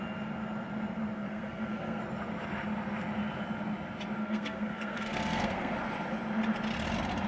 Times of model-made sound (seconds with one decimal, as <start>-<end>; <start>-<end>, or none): 1.2-2.0; 4.2-5.7